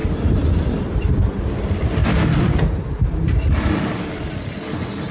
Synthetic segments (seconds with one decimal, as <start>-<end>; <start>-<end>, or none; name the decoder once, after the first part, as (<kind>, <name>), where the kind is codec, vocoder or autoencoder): 0.0-1.3 (vocoder, BigVGAN v2); 2.0-4.3